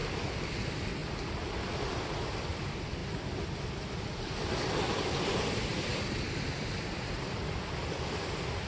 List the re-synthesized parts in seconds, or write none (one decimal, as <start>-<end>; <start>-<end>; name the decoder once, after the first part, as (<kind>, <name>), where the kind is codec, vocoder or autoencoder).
0.6-1.0 (vocoder, BigVGAN v2); 1.9-3.0; 3.8-8.7